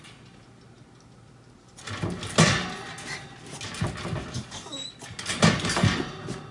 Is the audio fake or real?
real